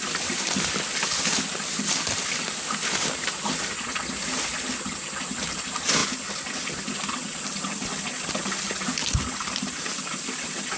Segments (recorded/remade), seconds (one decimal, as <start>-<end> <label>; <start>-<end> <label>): 0.0-10.8 recorded